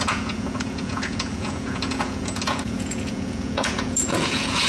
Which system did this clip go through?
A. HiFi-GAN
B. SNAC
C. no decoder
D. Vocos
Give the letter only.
D